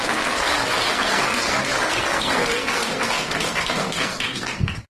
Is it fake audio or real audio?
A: fake